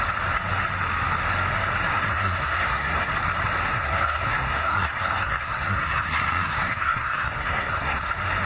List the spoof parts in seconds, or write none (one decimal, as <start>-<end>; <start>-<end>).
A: 1.9-3.1; 3.7-8.1